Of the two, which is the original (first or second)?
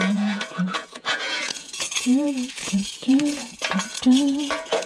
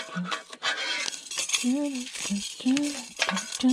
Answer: second